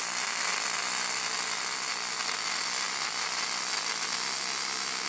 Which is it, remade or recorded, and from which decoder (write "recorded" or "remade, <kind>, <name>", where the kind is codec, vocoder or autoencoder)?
recorded